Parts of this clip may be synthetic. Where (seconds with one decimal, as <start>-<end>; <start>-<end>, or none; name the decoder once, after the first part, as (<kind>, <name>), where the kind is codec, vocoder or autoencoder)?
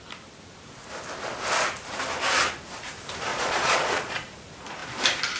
3.3-4.1 (vocoder, Vocos)